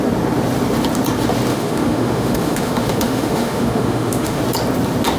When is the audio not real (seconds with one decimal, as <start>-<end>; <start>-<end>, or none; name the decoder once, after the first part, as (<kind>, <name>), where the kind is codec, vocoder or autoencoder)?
1.5-4.4 (autoencoder, DAC-VAE)